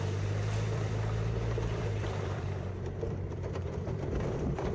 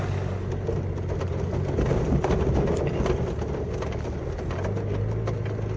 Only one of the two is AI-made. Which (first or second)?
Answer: first